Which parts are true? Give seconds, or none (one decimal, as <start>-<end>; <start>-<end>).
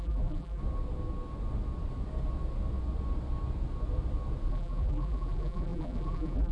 0.6-4.5